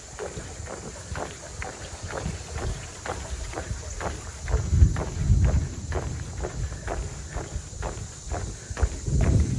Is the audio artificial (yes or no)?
no